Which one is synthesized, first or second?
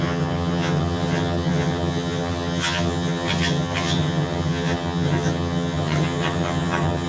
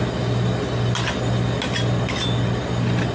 first